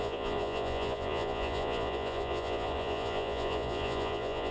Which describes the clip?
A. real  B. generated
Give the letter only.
B